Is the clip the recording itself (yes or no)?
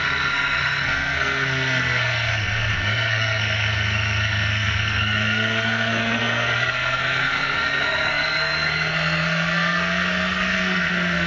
no